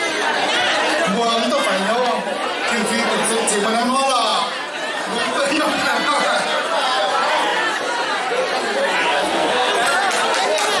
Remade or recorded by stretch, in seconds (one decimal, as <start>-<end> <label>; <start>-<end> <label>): 0.0-9.1 recorded; 9.1-9.7 remade; 9.7-10.8 recorded